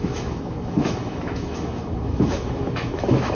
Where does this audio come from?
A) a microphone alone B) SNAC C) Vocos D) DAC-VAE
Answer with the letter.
D